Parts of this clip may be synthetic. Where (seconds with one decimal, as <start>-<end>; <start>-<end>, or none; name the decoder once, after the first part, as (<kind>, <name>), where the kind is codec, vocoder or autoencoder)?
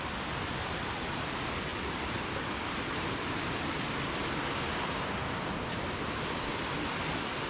none